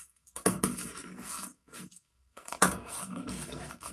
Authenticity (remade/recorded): remade